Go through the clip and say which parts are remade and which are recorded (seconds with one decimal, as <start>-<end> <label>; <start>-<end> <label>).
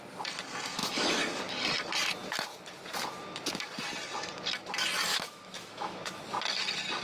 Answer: 0.0-0.8 recorded; 0.8-1.4 remade; 1.4-5.1 recorded; 5.1-6.2 remade; 6.2-7.0 recorded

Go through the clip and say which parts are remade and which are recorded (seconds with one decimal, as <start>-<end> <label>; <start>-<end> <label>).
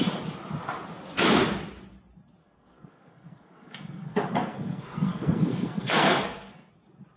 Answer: 0.0-2.4 recorded; 2.4-6.7 remade; 6.7-7.2 recorded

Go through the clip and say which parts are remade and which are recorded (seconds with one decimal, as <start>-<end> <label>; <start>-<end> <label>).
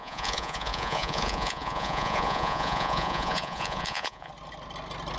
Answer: 0.0-4.3 remade; 4.3-5.2 recorded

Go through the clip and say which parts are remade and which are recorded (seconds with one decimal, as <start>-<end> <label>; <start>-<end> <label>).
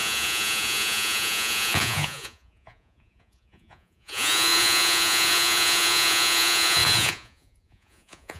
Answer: 0.0-8.4 remade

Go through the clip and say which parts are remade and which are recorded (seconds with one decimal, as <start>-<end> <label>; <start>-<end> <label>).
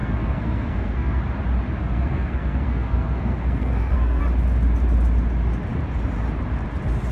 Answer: 0.0-1.2 remade; 1.2-1.8 recorded; 1.8-4.2 remade; 4.2-7.1 recorded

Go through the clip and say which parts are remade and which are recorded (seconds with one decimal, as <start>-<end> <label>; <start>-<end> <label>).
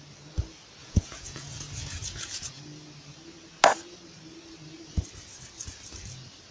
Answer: 0.0-0.8 recorded; 0.8-2.6 remade; 2.6-6.5 recorded